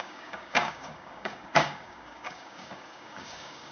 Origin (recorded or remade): remade